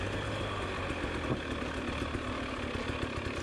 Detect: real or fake real